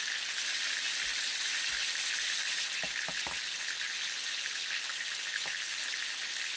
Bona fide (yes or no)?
yes